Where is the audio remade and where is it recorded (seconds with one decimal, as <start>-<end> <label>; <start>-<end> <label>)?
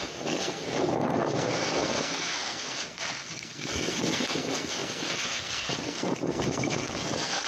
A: 0.0-7.5 remade